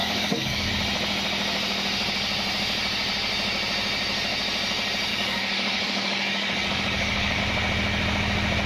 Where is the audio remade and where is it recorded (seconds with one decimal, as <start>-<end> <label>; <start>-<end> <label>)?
0.0-0.7 remade; 0.7-5.1 recorded; 5.1-7.4 remade; 7.4-8.7 recorded